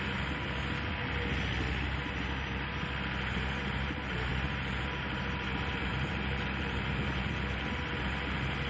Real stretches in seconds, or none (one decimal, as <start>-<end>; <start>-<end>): 0.0-5.9; 7.9-8.7